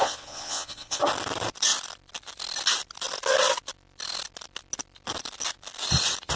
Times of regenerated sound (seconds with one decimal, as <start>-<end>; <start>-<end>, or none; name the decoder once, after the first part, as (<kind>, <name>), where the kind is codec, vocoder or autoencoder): 0.0-1.0 (vocoder, Vocos)